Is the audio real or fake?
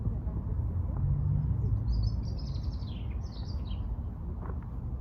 real